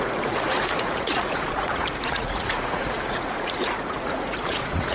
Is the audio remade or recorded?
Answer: remade